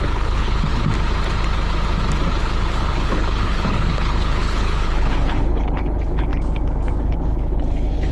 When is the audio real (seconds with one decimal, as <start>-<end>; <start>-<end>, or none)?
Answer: 0.7-2.4; 6.3-7.0

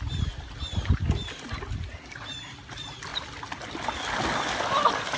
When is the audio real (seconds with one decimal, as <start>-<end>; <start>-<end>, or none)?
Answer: 0.0-5.2

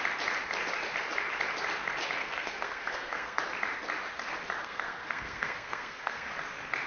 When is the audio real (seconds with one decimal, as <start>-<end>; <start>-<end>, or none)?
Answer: 0.0-2.2; 3.4-4.6; 6.3-6.9

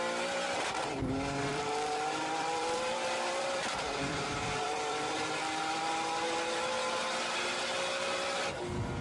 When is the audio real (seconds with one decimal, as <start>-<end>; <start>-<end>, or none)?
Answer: 0.0-1.5; 5.4-9.0

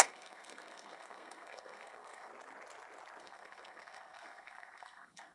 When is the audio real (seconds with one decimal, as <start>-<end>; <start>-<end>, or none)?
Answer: 2.3-3.2

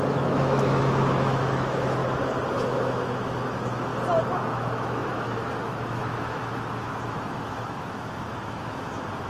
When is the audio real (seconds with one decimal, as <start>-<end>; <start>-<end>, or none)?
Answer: 2.0-2.5; 3.9-4.4

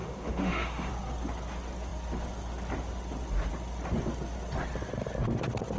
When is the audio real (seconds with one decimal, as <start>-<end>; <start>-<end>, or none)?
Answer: 0.9-5.8

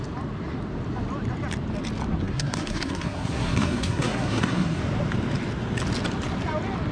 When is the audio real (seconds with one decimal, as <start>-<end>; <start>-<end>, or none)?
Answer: 0.0-2.2; 4.8-6.9